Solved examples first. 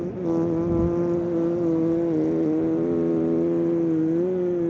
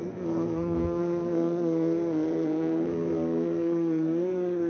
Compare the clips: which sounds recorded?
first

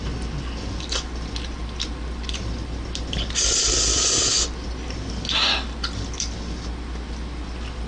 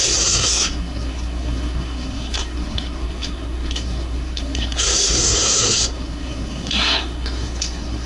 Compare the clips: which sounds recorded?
first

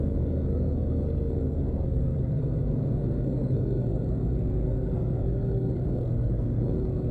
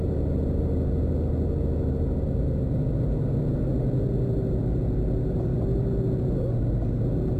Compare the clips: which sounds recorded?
second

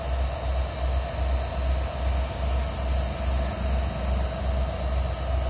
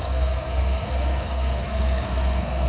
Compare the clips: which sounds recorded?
first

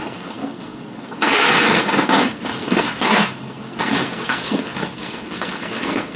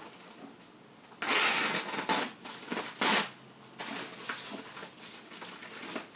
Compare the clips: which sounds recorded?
second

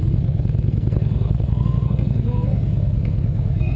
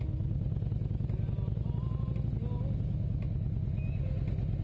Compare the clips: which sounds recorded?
second